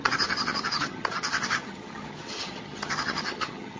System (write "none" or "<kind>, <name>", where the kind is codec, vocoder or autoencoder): vocoder, HiFi-GAN